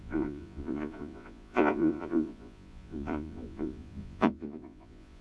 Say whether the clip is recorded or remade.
remade